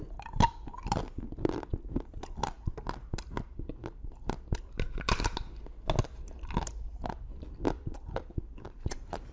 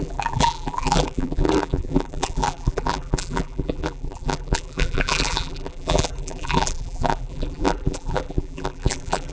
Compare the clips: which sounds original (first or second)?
first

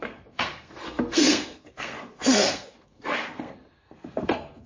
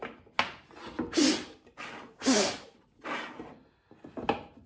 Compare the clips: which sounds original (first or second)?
second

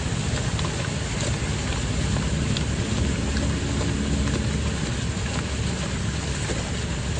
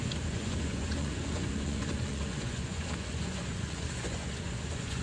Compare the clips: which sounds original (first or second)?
first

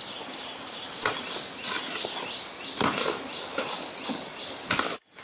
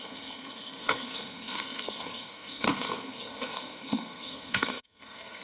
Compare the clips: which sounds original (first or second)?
first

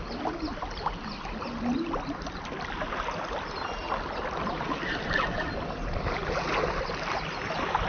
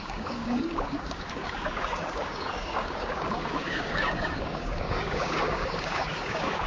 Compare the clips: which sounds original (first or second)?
first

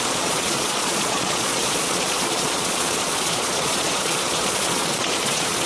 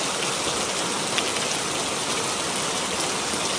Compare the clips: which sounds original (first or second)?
second